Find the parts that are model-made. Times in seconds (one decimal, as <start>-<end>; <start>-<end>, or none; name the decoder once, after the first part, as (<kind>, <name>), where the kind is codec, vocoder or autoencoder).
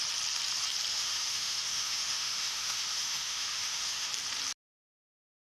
0.9-4.1 (autoencoder, DAC-VAE)